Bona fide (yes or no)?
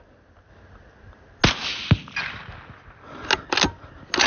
yes